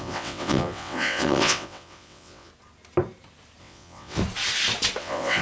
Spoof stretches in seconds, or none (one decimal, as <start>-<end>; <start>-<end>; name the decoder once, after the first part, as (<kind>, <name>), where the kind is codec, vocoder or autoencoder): 0.0-2.5 (vocoder, WaveNeXt); 3.6-4.2; 5.0-5.4